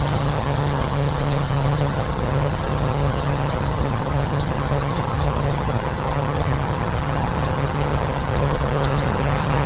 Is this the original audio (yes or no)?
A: no